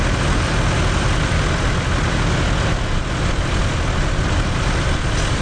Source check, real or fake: real